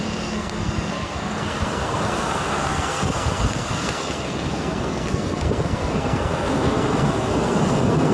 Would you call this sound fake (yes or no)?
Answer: yes